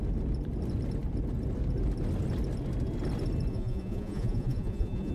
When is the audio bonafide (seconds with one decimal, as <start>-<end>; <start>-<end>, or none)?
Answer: 0.0-3.5